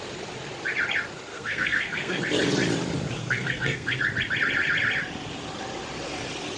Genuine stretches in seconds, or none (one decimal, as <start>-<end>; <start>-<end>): 0.0-1.3; 2.2-3.2; 4.0-6.6